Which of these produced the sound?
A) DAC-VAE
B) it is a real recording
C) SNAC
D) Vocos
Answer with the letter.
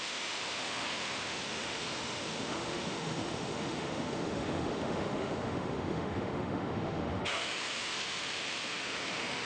A